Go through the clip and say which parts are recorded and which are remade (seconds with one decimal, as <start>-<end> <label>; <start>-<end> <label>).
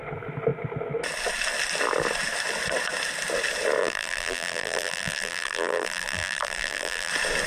0.0-3.8 recorded; 3.8-7.1 remade; 7.1-7.5 recorded